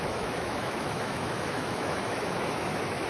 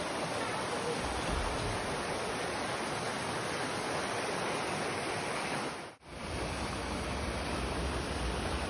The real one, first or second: second